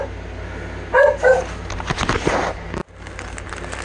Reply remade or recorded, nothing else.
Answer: recorded